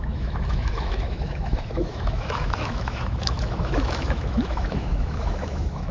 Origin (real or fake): fake